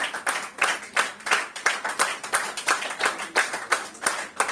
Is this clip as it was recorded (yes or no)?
yes